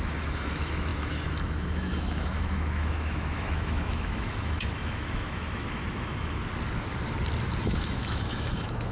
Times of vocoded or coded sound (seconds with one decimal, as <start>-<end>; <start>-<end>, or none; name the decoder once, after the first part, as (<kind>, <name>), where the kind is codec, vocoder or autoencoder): 0.0-6.4 (autoencoder, DAC-VAE); 7.6-8.9

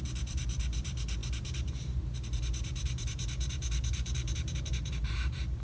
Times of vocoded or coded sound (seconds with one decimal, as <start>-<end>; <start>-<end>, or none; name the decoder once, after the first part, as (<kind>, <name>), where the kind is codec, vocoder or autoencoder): 0.0-5.6 (vocoder, BigVGAN v2)

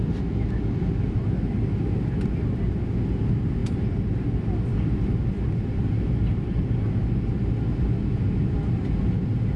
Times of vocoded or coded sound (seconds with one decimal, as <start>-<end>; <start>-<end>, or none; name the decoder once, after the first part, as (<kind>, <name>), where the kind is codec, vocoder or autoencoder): none

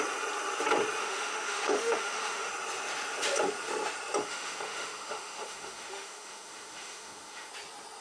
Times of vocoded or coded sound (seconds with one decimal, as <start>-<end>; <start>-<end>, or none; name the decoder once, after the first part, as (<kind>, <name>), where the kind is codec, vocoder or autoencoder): 1.0-2.5 (autoencoder, DAC-VAE); 4.2-7.5

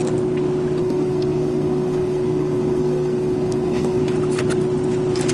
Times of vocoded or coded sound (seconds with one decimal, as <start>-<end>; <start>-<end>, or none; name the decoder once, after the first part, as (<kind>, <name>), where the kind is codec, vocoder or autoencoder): 0.8-4.0 (codec, SNAC)